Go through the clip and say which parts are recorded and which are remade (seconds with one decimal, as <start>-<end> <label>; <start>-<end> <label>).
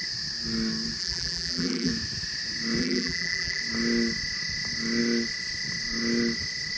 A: 0.0-1.0 recorded; 1.0-1.9 remade; 1.9-2.8 recorded; 2.8-3.6 remade; 3.6-6.8 recorded